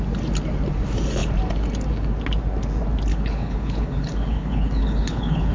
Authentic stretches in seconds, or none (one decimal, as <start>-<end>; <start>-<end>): 0.0-3.1